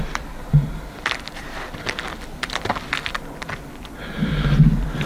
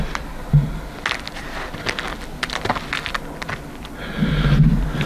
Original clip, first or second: second